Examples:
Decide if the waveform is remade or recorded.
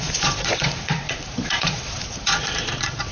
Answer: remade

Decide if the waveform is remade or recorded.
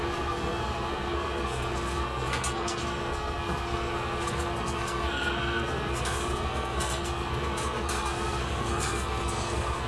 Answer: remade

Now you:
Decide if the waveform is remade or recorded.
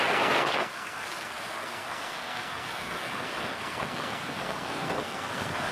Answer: remade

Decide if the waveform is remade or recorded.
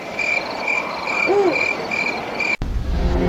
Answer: recorded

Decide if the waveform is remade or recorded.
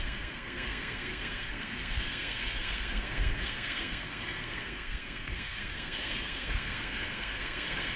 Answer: remade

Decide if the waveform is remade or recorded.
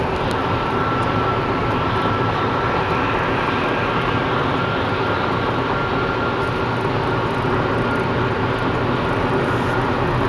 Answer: recorded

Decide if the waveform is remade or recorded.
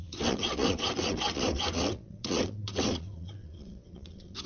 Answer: remade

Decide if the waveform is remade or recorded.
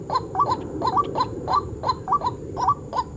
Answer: remade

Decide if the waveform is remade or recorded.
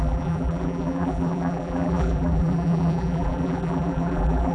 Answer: remade